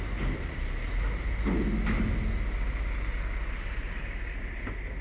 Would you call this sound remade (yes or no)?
no